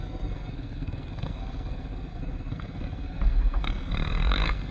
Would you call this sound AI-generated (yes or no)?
yes